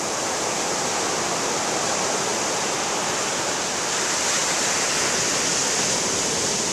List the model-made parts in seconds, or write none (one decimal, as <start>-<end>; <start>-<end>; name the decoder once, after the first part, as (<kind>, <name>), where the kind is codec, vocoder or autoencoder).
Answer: none